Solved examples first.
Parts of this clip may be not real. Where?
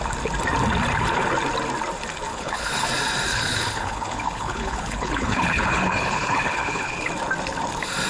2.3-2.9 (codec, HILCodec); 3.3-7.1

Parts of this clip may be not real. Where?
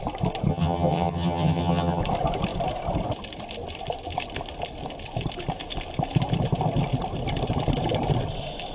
0.5-2.0 (vocoder, HiFi-GAN)